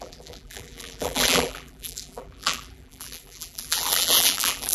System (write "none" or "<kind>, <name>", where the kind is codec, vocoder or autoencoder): vocoder, BigVGAN v2